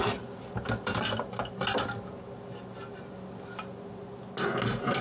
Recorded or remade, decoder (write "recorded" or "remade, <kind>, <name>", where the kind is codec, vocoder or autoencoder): recorded